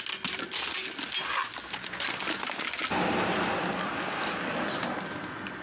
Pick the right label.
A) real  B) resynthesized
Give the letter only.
A